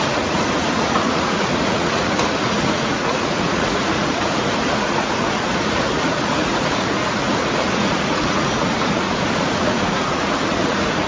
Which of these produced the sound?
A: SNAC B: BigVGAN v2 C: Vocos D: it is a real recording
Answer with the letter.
C